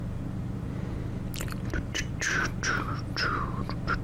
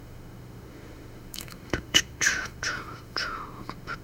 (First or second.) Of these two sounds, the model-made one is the second